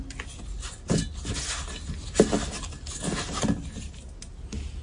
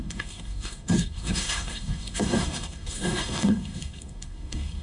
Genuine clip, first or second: first